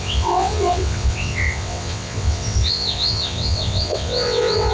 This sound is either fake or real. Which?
fake